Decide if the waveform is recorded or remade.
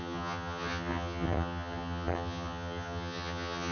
remade